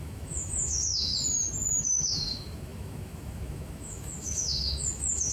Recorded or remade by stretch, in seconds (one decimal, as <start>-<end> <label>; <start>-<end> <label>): 0.0-1.1 remade; 1.1-1.8 recorded; 1.8-5.3 remade